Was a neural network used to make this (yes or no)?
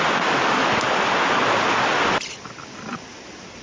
no